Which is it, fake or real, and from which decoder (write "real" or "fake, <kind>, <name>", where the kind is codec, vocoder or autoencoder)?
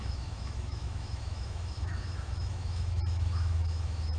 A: fake, autoencoder, DAC-VAE